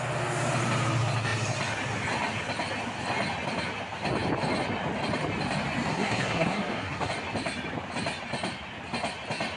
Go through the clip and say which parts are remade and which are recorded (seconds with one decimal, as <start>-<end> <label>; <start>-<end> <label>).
0.0-5.9 recorded; 5.9-7.1 remade; 7.1-9.6 recorded